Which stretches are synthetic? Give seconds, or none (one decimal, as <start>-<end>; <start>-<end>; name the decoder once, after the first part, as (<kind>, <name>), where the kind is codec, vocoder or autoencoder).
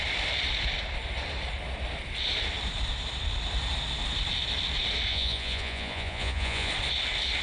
5.1-6.7 (vocoder, Vocos)